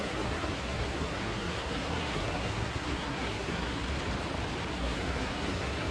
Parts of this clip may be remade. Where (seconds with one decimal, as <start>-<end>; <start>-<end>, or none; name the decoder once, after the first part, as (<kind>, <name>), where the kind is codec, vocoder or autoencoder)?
0.0-3.9 (codec, SNAC); 4.7-5.9